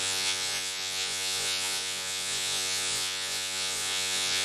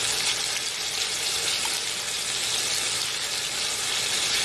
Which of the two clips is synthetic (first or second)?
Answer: first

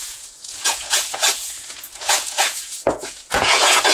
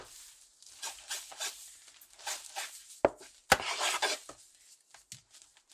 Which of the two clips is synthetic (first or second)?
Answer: first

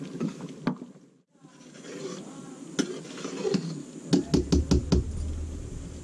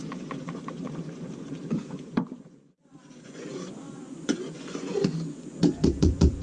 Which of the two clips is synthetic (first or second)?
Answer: second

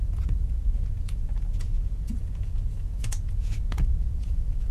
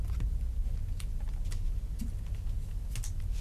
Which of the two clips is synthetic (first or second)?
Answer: first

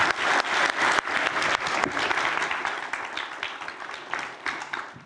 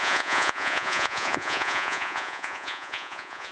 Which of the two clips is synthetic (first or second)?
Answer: second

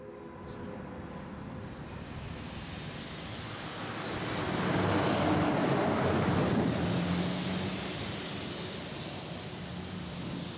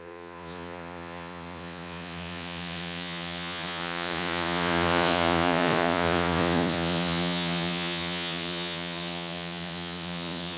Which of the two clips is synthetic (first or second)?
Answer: second